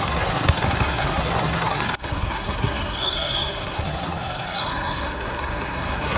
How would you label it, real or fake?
fake